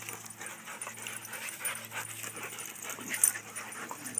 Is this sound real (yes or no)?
yes